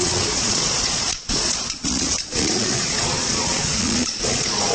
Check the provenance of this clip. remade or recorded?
remade